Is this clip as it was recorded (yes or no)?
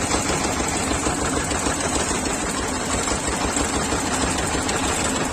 yes